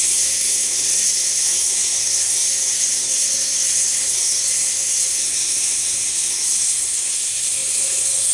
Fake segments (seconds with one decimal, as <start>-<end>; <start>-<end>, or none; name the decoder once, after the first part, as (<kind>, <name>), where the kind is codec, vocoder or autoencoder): 0.0-8.3 (codec, SNAC)